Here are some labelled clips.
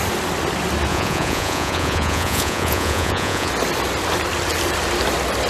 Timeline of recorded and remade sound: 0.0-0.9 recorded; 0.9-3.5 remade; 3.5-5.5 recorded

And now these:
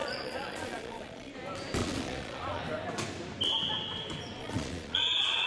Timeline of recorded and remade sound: 0.0-1.3 remade; 1.3-1.8 recorded; 1.8-2.6 remade; 2.6-4.4 recorded; 4.4-5.5 remade

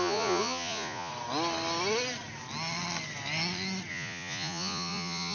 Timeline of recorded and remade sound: 0.0-1.1 remade; 1.1-3.9 recorded; 3.9-5.3 remade